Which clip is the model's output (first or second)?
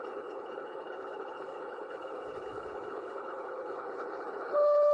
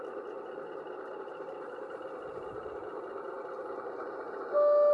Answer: first